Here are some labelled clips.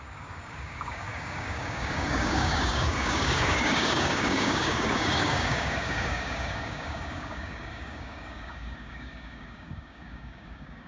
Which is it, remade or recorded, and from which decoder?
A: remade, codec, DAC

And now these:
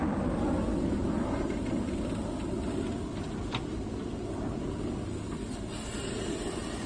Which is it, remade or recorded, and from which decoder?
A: recorded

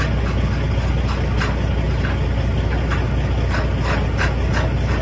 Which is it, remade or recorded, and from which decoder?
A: recorded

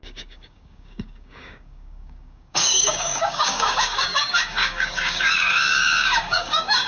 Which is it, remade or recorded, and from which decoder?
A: remade, codec, DAC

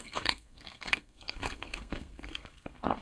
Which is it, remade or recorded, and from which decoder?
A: remade, codec, SNAC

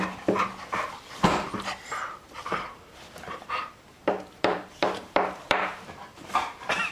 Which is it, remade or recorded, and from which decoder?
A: remade, vocoder, BigVGAN v2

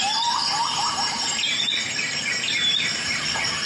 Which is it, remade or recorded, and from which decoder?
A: remade, vocoder, BigVGAN v2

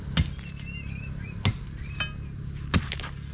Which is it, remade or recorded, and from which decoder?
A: recorded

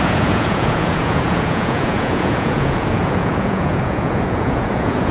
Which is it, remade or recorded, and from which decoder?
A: remade, vocoder, Vocos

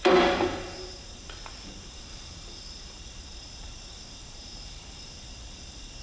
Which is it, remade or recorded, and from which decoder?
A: remade, vocoder, BigVGAN v2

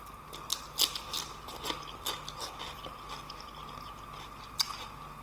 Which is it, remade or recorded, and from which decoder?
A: recorded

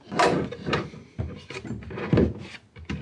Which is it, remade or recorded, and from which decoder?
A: recorded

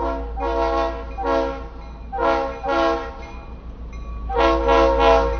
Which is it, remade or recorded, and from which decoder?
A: recorded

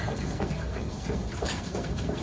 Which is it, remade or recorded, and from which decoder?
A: remade, codec, SNAC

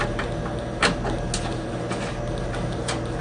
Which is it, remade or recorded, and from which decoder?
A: recorded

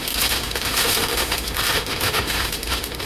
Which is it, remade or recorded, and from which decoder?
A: remade, autoencoder, DAC-VAE